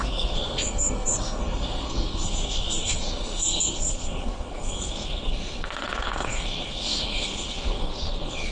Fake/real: fake